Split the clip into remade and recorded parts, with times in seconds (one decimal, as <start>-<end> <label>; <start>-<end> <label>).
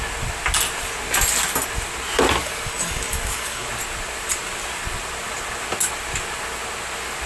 0.0-2.4 recorded; 2.4-3.7 remade; 3.7-7.3 recorded